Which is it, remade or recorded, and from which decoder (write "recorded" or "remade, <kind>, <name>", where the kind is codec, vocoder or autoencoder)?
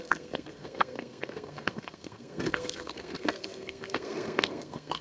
remade, codec, SNAC